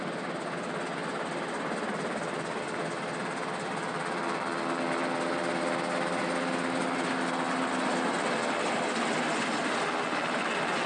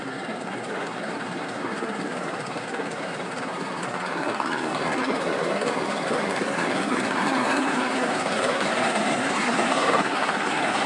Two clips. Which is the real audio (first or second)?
first